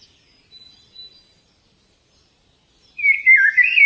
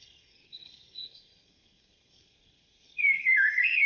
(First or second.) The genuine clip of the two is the first